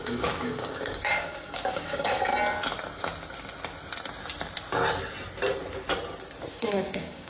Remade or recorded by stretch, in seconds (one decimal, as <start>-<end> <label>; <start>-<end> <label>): 0.0-2.3 remade; 2.3-6.5 recorded; 6.5-7.3 remade